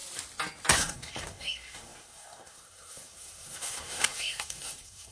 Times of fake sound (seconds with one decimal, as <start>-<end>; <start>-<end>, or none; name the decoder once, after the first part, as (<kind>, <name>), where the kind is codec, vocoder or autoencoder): 0.7-5.1 (codec, SNAC)